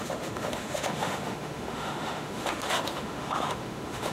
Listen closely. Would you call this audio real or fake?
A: fake